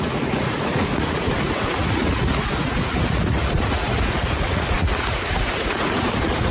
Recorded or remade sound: remade